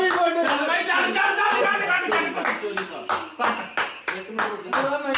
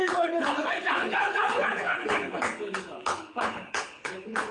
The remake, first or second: second